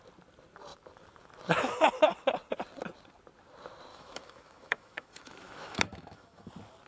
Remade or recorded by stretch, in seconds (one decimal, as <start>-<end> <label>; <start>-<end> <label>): 0.0-3.9 recorded; 3.9-6.5 remade; 6.5-6.9 recorded